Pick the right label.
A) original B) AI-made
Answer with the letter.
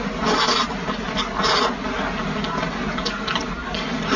A